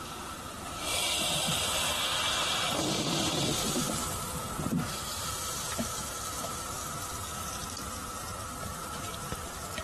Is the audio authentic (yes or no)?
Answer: no